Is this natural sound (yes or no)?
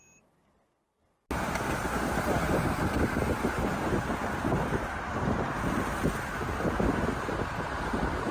yes